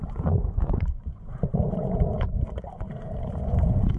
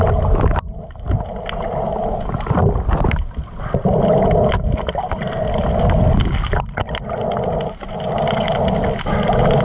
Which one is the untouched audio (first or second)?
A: second